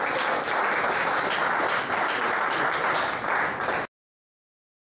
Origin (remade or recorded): recorded